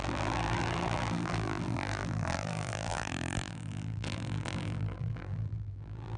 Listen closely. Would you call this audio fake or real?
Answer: fake